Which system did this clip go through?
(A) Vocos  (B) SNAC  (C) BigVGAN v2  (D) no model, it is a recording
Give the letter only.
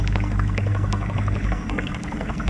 B